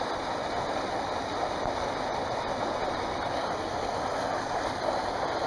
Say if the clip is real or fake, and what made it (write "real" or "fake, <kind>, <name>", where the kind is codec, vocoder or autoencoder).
real